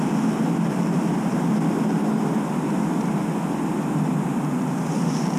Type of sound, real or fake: real